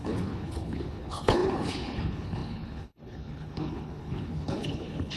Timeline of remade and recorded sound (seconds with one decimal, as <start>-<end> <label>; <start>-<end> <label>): 0.0-5.2 remade